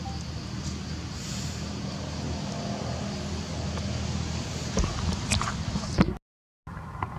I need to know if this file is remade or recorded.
recorded